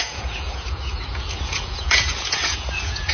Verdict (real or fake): fake